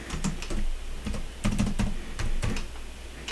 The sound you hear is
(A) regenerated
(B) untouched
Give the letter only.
B